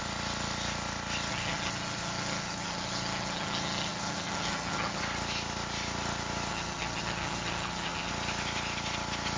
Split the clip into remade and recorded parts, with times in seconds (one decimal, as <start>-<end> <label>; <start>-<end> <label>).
0.0-1.3 recorded; 1.3-5.0 remade; 5.0-6.5 recorded; 6.5-8.1 remade; 8.1-9.4 recorded